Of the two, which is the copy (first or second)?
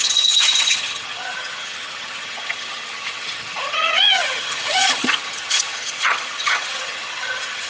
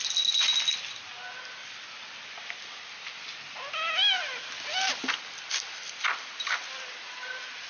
first